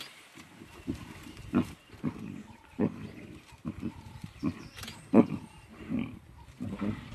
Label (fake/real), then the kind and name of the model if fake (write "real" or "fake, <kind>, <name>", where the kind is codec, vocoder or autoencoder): real